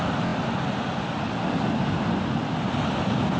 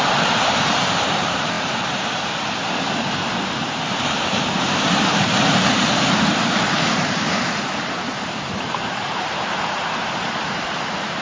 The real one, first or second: first